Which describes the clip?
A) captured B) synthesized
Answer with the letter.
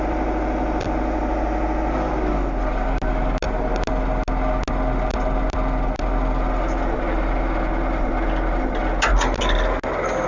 A